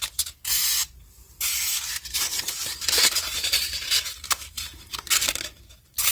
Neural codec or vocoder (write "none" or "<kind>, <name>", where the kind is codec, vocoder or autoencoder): vocoder, BigVGAN v2